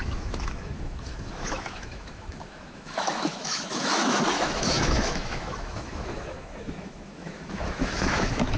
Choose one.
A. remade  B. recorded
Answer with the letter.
A